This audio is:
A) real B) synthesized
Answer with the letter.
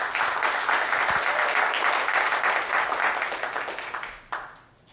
A